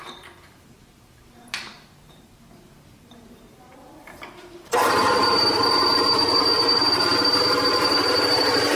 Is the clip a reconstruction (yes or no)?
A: yes